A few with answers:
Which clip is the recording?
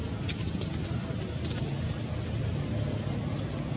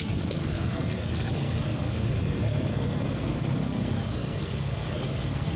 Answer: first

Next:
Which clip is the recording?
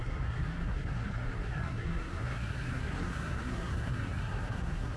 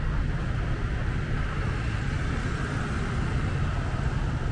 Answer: second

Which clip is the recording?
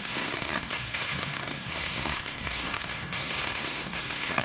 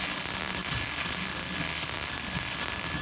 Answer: second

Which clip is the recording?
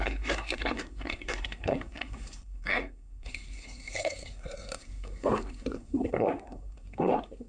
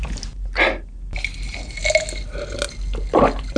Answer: second